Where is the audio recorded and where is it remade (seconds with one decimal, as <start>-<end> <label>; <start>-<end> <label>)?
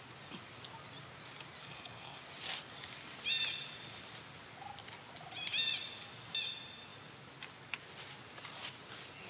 0.0-1.6 recorded; 1.6-2.2 remade; 2.2-9.3 recorded